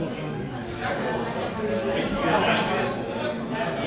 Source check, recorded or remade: recorded